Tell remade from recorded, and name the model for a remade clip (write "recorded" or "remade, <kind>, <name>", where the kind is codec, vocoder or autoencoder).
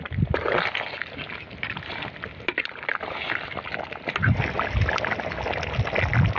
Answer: recorded